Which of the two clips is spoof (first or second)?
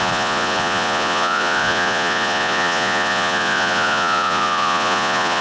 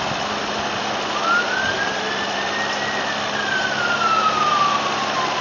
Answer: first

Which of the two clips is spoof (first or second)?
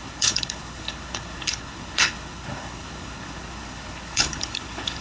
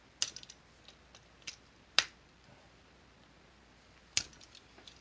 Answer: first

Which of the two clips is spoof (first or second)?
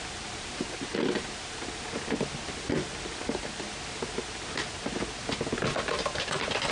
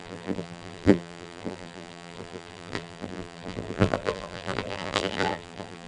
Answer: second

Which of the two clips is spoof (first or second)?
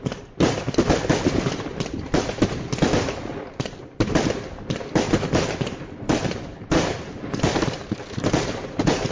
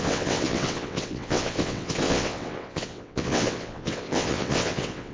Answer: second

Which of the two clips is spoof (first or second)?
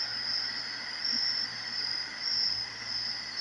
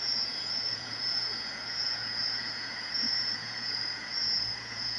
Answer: second